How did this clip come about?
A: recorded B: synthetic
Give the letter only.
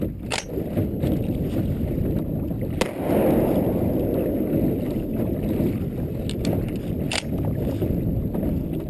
A